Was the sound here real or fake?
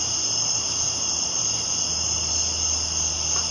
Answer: real